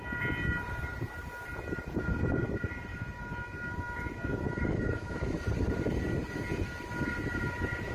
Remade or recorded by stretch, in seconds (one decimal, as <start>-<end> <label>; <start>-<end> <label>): 0.0-2.9 recorded; 2.9-5.4 remade; 5.4-7.9 recorded